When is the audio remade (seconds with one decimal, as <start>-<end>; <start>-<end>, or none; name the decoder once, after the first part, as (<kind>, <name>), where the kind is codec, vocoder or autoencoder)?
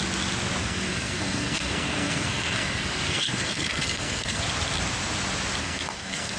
0.6-4.4 (codec, SNAC); 5.6-6.4